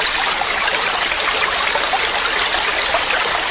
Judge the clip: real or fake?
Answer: real